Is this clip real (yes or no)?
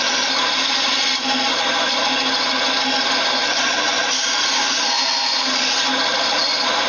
yes